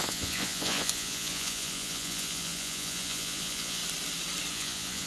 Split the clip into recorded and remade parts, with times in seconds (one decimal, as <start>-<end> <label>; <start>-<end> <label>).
0.0-3.8 remade; 3.8-4.5 recorded; 4.5-5.1 remade